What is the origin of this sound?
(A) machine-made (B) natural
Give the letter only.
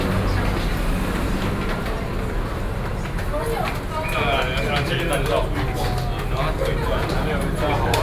B